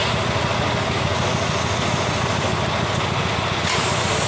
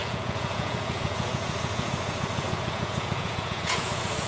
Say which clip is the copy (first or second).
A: second